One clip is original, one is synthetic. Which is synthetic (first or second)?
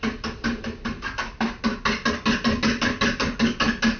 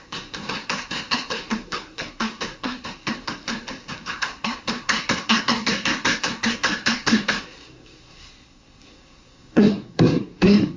second